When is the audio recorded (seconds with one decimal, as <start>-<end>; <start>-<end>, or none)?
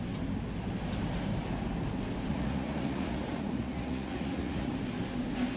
0.0-2.3; 4.7-5.6